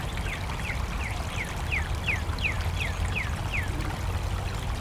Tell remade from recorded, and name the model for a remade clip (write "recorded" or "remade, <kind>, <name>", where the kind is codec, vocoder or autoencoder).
recorded